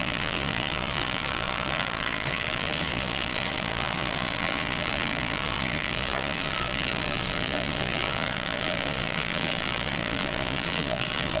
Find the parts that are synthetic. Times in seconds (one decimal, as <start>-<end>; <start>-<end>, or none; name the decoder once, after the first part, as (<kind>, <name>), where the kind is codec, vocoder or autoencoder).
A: 0.0-11.4 (vocoder, Vocos)